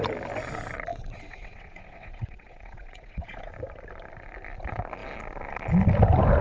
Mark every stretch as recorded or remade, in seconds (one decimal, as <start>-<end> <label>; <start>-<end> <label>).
0.0-0.9 recorded; 0.9-3.5 remade; 3.5-6.4 recorded